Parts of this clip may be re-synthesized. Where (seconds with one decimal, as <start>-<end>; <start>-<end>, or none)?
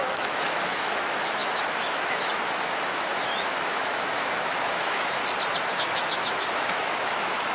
0.0-5.2; 5.7-7.5